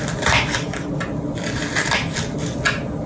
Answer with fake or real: real